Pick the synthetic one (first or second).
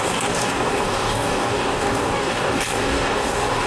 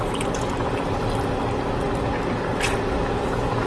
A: first